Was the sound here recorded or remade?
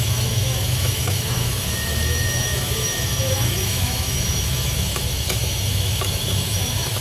remade